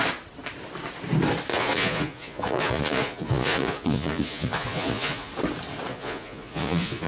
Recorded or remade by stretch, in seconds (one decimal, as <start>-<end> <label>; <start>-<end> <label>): 0.0-1.5 recorded; 1.5-5.3 remade; 5.3-5.9 recorded; 5.9-7.1 remade